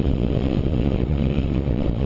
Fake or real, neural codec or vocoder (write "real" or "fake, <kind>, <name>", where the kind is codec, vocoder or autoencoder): fake, vocoder, WaveNeXt